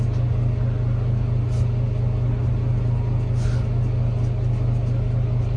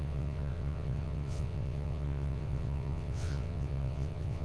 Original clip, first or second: first